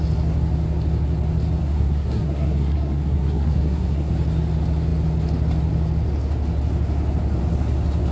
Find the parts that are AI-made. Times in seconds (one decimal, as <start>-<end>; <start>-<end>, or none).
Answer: 1.6-4.1